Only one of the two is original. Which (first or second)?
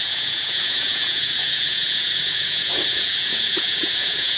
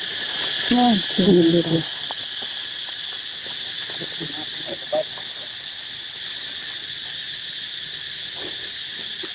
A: second